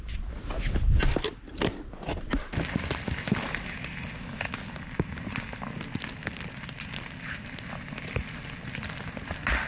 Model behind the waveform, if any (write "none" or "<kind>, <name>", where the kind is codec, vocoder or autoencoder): none